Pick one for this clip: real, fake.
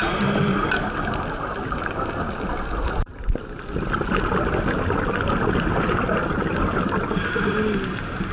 real